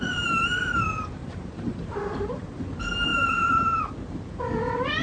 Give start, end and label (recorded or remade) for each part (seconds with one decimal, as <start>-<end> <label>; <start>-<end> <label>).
0.0-0.7 remade; 0.7-1.2 recorded; 1.2-2.3 remade; 2.3-5.0 recorded